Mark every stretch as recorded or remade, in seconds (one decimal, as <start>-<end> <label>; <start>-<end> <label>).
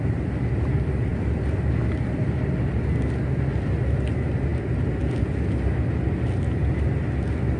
0.0-7.6 recorded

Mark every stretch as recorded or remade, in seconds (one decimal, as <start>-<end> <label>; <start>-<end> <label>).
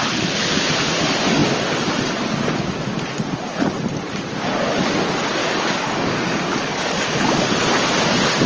0.0-5.4 recorded; 5.4-7.2 remade; 7.2-8.5 recorded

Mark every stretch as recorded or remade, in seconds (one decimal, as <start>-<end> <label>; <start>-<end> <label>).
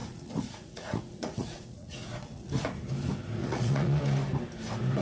0.0-2.5 remade; 2.5-3.4 recorded; 3.4-4.0 remade; 4.0-5.0 recorded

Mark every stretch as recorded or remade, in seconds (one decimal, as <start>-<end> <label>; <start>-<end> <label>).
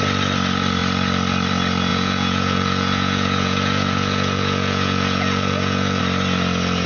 0.0-1.9 recorded; 1.9-6.0 remade; 6.0-6.9 recorded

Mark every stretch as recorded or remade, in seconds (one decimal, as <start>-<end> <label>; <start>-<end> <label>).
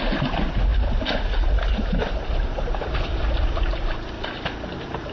0.0-5.1 recorded